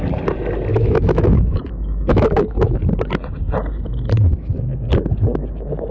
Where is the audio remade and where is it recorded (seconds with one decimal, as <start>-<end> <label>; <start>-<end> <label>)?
0.0-0.7 recorded; 0.7-2.8 remade; 2.8-5.9 recorded